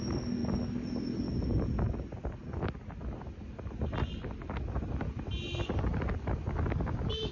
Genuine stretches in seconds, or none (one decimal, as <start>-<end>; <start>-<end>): 0.0-7.3